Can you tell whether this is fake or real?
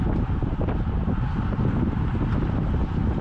real